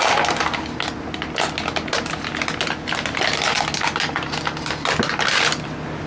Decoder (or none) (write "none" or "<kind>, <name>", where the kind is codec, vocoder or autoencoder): none